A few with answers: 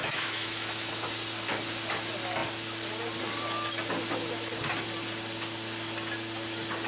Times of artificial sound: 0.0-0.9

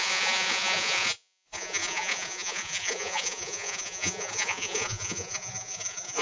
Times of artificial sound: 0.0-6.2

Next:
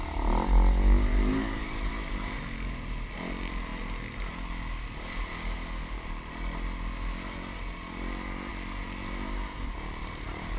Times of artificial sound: 1.1-1.9

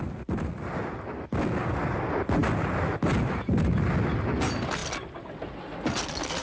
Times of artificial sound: none

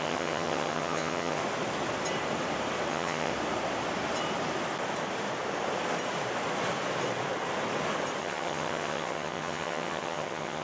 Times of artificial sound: 0.0-1.4; 2.9-3.3; 8.2-10.6

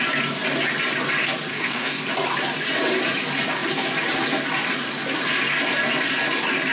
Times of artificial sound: 1.5-2.0

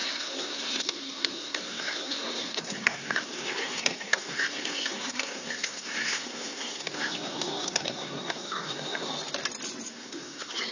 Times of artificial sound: 0.0-9.1; 9.9-10.7